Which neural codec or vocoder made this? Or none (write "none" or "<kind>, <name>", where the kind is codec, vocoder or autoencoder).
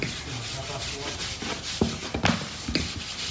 none